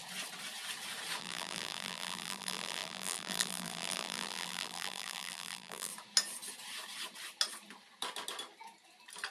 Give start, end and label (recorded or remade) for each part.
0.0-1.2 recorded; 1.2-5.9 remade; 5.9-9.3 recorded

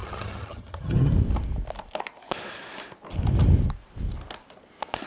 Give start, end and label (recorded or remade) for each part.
0.0-1.1 remade; 1.1-5.1 recorded

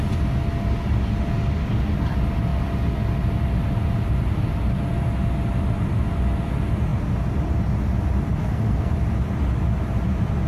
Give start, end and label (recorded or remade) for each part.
0.0-8.4 recorded; 8.4-8.9 remade; 8.9-10.5 recorded

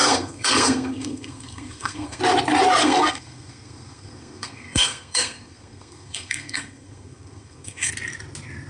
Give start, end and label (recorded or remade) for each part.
0.0-2.2 remade; 2.2-2.8 recorded; 2.8-7.9 remade; 7.9-8.7 recorded